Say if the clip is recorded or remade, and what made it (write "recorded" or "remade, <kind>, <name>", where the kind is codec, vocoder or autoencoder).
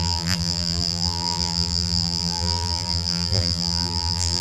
remade, vocoder, BigVGAN v2